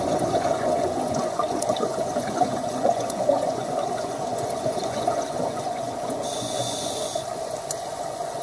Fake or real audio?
fake